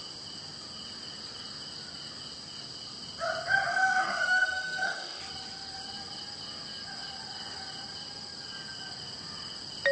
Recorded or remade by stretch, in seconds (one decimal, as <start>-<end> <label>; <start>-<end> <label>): 0.0-3.7 recorded; 3.7-5.2 remade; 5.2-9.9 recorded